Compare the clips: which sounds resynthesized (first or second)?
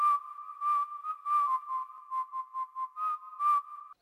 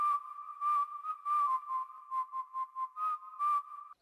second